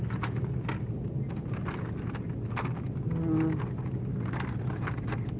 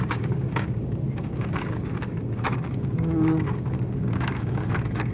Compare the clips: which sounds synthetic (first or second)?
second